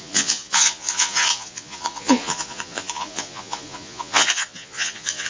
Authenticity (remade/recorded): remade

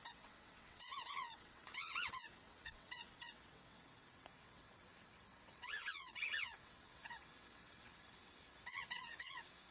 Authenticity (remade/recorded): remade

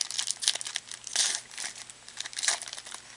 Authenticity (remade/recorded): recorded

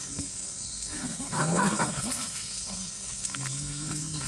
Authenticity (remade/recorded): remade